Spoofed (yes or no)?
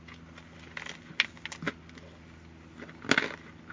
no